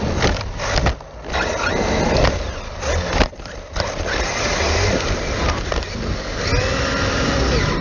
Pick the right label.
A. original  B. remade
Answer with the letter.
A